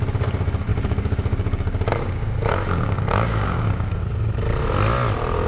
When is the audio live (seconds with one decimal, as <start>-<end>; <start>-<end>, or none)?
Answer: 0.0-0.7; 4.0-5.5

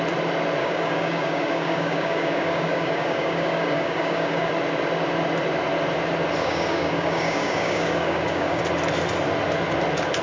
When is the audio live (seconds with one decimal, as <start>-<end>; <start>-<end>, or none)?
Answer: 0.0-0.6; 4.5-6.4; 8.6-10.2

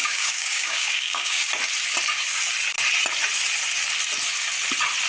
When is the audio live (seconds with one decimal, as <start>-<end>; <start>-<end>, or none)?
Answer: 1.5-5.1

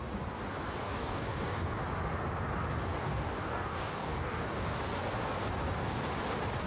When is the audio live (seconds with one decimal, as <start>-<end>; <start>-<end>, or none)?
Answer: 0.0-0.8; 1.8-3.0; 4.8-6.7

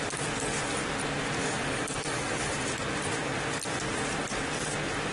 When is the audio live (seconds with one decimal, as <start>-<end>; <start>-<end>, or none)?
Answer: 0.0-1.4; 2.6-5.1

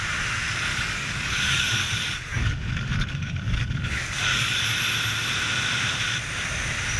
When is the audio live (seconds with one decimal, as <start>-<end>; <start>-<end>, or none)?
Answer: 0.0-0.7; 4.6-7.0